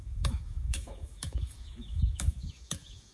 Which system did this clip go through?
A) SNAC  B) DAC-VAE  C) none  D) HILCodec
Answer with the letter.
B